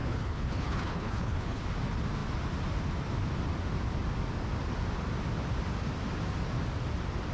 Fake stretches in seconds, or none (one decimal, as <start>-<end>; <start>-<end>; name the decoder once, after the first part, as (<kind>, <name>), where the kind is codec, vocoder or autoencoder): 0.0-1.6 (codec, HILCodec)